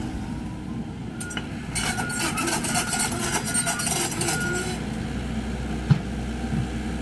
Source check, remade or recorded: recorded